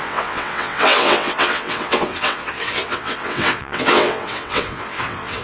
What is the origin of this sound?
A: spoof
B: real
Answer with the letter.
A